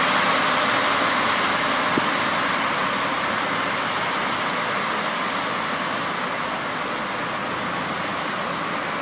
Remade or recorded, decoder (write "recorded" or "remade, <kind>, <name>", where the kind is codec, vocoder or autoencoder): recorded